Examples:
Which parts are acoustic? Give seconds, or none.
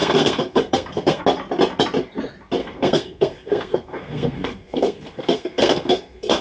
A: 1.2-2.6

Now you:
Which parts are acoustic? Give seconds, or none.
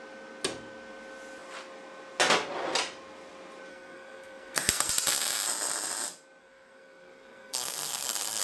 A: 0.0-3.7; 4.9-6.4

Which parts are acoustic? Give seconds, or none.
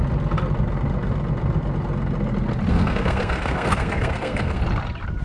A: 0.0-2.7; 4.6-5.2